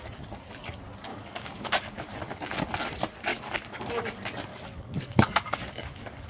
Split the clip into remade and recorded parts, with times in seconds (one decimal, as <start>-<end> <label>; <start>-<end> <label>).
0.0-1.1 recorded; 1.1-1.9 remade; 1.9-3.3 recorded; 3.3-3.9 remade; 3.9-4.5 recorded; 4.5-6.3 remade